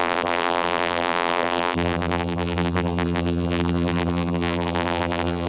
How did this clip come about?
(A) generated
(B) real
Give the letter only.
A